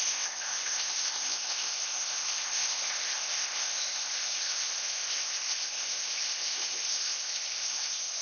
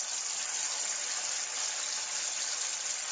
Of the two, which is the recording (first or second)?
second